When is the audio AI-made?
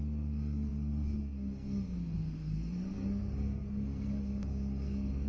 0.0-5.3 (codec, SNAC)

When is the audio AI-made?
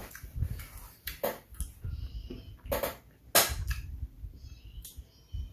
none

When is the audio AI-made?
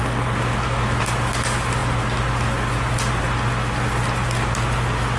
none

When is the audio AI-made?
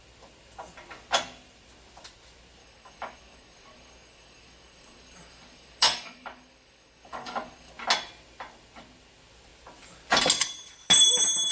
2.6-7.7 (codec, DAC)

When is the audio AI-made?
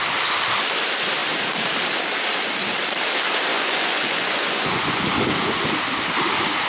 3.5-5.0 (vocoder, Vocos)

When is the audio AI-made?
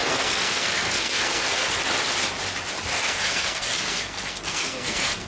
0.0-1.8 (codec, SNAC); 2.9-5.3